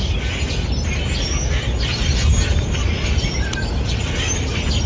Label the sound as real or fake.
real